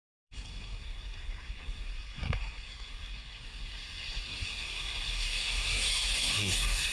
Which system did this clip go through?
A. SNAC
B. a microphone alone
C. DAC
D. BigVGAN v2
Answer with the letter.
A